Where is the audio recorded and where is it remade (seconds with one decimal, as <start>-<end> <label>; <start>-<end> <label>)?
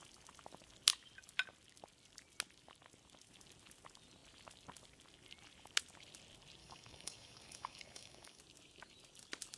0.0-6.6 recorded; 6.6-8.4 remade; 8.4-9.6 recorded